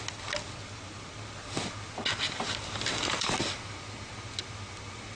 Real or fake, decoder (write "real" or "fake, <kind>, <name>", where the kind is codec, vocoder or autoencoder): real